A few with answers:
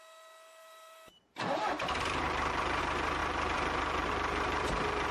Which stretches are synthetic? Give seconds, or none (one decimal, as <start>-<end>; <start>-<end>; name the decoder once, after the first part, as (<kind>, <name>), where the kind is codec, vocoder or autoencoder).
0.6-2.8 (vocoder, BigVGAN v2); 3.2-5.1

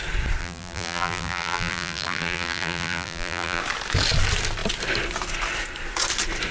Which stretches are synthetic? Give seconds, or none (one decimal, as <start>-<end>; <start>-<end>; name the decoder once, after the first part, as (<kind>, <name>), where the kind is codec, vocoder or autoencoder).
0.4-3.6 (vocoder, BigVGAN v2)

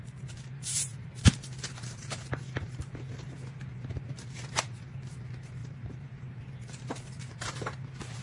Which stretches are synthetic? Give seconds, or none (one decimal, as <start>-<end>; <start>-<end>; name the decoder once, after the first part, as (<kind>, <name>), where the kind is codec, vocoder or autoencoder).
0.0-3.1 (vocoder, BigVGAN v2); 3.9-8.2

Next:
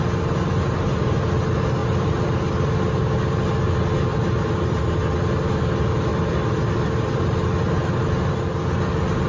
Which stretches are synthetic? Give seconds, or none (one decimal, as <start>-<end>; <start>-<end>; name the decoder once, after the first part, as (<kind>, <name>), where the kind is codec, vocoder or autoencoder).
4.1-4.8 (vocoder, BigVGAN v2); 6.1-7.2